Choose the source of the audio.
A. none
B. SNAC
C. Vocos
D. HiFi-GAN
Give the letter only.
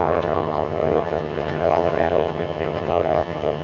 D